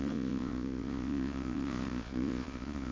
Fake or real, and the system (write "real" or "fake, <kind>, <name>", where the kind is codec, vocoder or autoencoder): fake, vocoder, Vocos